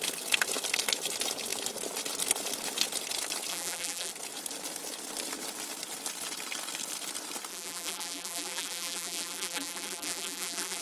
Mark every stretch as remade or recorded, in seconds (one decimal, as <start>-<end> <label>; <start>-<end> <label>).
0.0-3.5 recorded; 3.5-4.1 remade; 4.1-7.5 recorded; 7.5-10.8 remade